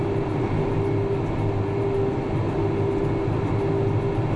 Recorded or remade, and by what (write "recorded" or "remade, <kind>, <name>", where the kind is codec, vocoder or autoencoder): recorded